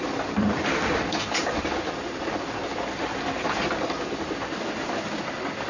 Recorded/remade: recorded